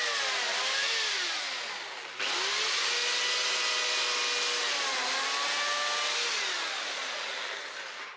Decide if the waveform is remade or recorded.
recorded